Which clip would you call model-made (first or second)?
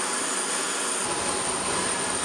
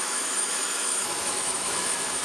second